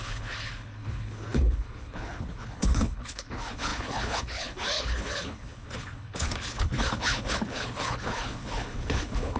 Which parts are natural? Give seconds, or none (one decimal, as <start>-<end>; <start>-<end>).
none